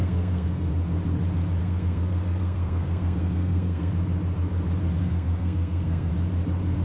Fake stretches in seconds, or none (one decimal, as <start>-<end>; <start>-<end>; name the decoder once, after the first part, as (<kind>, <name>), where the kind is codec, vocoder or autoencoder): 0.0-0.7 (codec, SNAC); 1.6-3.9; 5.0-6.1